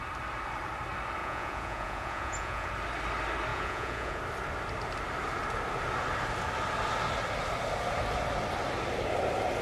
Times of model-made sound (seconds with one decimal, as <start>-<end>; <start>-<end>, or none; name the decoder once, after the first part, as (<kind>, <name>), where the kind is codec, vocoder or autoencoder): 1.2-2.7 (vocoder, Vocos); 3.5-4.2